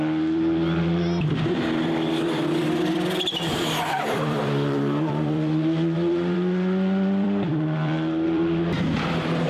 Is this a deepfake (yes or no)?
yes